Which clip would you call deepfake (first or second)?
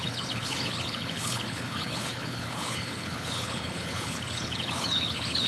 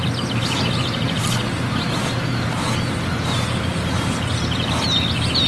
first